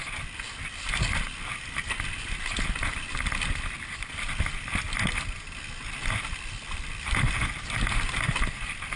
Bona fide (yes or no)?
yes